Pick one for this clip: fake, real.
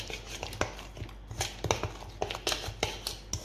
real